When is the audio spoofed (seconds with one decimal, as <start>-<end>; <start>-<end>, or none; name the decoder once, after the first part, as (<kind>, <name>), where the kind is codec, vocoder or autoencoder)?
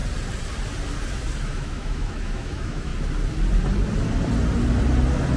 1.4-2.9 (autoencoder, DAC-VAE)